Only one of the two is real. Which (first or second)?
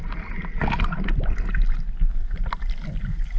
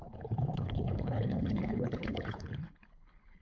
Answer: first